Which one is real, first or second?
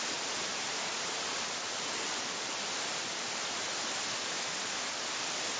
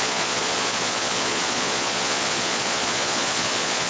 first